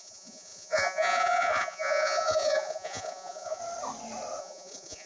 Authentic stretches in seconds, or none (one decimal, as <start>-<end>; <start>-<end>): 3.6-4.4